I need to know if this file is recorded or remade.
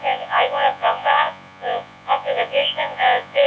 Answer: remade